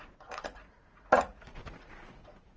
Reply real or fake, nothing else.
fake